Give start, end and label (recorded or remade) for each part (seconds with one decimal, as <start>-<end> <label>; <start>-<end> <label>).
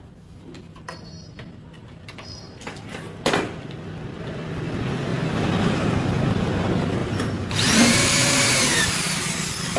0.0-1.8 recorded; 1.8-2.6 remade; 2.6-7.0 recorded; 7.0-9.8 remade